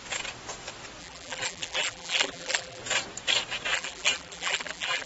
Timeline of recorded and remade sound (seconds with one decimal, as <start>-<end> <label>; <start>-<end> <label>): 0.0-1.0 recorded; 1.0-2.8 remade; 2.8-3.7 recorded; 3.7-5.1 remade